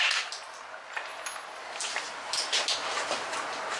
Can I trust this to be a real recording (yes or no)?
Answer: yes